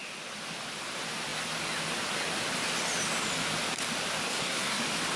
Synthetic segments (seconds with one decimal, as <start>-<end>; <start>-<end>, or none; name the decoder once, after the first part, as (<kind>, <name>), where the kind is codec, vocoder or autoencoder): 4.3-4.8 (codec, SNAC)